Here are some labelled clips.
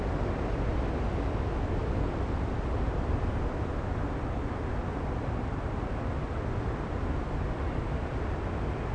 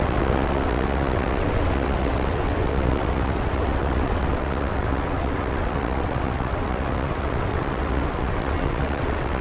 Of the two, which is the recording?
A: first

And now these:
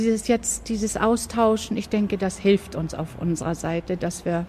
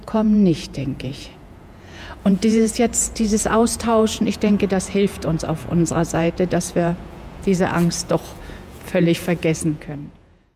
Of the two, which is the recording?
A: first